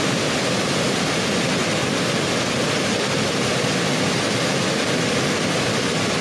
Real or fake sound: real